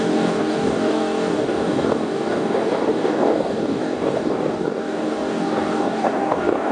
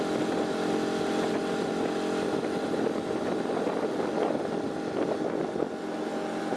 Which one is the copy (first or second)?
first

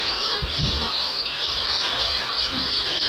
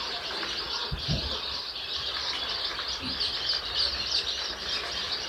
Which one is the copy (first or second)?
first